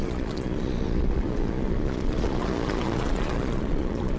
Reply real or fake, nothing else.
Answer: fake